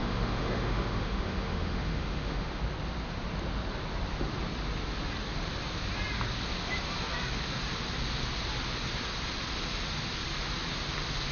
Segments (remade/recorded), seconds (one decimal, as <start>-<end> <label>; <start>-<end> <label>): 0.0-2.6 remade; 2.6-11.3 recorded